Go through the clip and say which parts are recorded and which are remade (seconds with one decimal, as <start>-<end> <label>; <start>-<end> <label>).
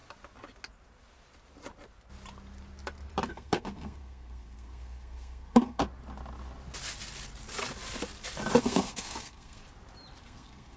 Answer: 0.0-3.3 recorded; 3.3-5.8 remade; 5.8-8.6 recorded; 8.6-9.6 remade; 9.6-10.2 recorded; 10.2-10.8 remade